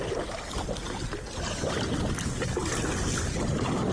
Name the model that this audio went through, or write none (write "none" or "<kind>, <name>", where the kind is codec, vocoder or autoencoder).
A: none